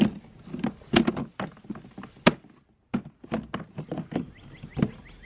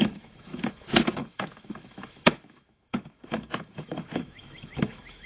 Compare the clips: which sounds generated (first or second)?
second